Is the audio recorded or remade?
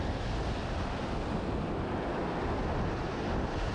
recorded